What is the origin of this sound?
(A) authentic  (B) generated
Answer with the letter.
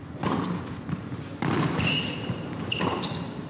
A